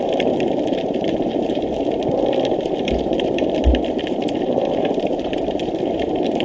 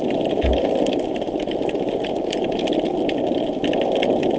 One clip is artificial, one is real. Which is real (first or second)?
second